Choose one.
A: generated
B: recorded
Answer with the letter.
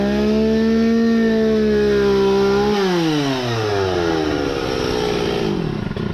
B